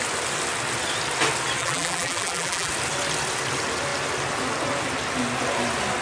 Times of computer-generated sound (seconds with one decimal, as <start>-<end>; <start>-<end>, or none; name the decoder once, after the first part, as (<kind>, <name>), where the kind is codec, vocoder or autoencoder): 1.6-2.7 (vocoder, BigVGAN v2)